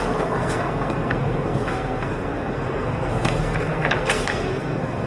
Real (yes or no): no